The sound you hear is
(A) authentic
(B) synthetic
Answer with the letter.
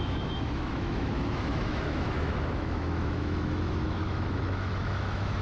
B